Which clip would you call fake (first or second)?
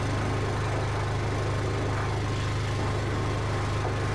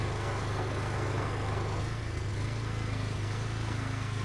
second